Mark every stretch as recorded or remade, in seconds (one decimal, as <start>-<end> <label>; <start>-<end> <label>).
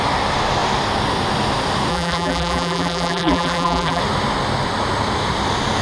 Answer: 0.0-1.9 recorded; 1.9-4.0 remade; 4.0-5.8 recorded